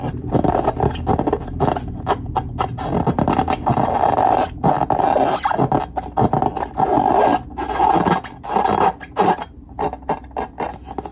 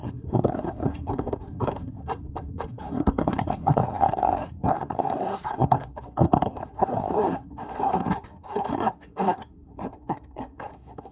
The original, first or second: first